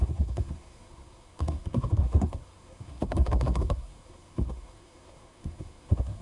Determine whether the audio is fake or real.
fake